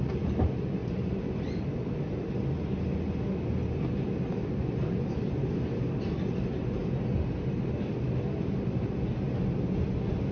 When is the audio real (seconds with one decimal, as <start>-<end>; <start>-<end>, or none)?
0.0-0.8; 2.2-10.3